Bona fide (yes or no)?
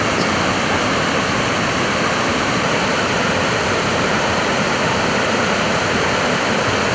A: no